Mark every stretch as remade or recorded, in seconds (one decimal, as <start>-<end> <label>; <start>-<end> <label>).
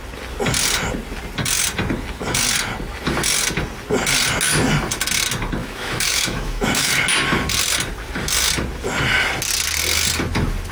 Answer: 0.0-5.6 recorded; 5.6-6.9 remade; 6.9-10.7 recorded